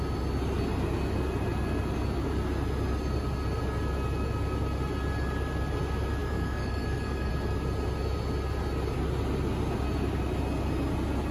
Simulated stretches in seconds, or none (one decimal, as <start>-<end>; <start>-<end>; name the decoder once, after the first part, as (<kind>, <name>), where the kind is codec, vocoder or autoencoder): 6.2-7.3 (codec, DAC)